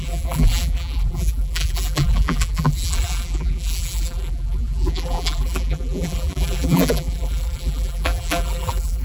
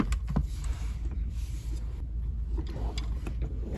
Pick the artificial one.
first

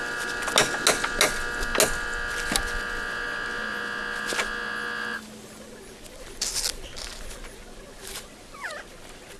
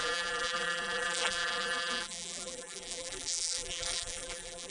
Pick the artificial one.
second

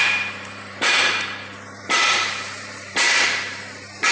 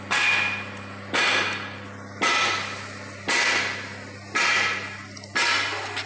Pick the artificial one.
first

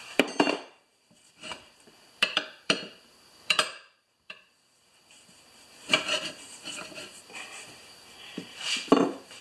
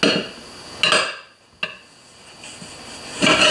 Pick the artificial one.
first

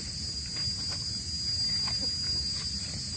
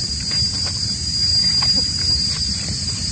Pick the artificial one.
second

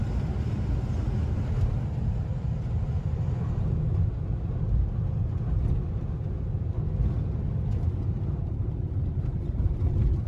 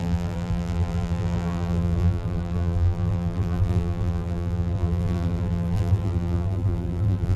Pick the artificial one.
second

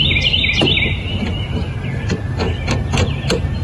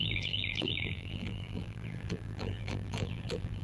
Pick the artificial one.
second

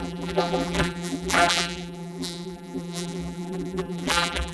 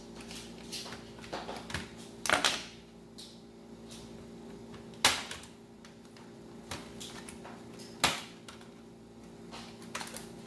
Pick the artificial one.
first